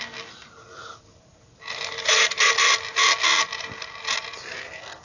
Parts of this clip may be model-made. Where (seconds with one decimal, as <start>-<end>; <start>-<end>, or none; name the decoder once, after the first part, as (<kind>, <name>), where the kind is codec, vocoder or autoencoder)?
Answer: none